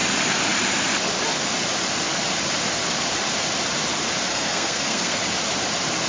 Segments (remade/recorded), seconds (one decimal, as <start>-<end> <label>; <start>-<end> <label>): 0.0-4.3 recorded; 4.3-5.2 remade; 5.2-6.1 recorded